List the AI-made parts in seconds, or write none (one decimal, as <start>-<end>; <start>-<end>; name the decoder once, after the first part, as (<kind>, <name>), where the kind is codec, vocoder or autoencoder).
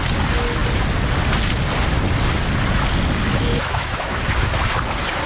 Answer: 3.5-4.2 (autoencoder, DAC-VAE)